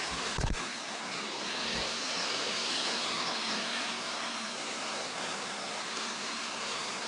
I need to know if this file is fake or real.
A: fake